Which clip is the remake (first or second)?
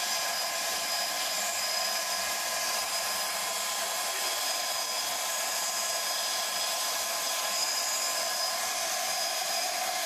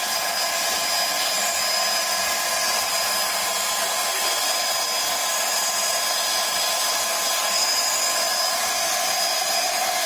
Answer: first